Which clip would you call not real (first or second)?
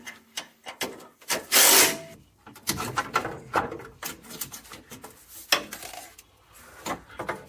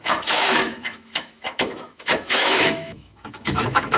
second